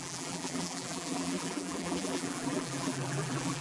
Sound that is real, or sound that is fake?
fake